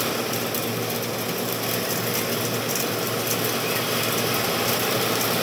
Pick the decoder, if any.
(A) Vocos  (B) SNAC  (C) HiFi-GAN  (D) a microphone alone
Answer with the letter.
D